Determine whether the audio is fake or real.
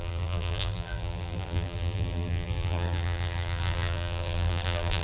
fake